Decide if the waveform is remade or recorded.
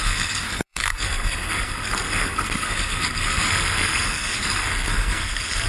remade